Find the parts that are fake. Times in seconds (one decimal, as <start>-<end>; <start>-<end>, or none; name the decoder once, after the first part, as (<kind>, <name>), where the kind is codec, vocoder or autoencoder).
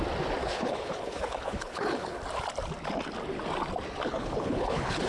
0.4-2.2 (codec, HILCodec); 4.1-5.1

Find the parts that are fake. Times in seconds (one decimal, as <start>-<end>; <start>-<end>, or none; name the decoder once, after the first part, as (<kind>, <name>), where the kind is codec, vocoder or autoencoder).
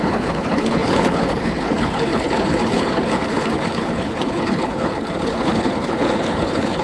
0.0-6.8 (codec, HILCodec)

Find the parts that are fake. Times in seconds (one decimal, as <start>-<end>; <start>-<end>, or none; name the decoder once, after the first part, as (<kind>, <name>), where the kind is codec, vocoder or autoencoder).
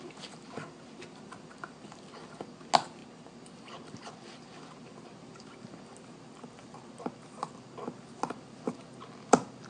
none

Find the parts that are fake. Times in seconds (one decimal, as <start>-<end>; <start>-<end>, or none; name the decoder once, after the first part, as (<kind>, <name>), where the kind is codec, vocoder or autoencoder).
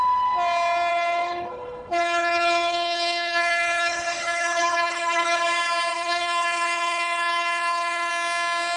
0.9-5.4 (codec, HILCodec); 5.9-8.1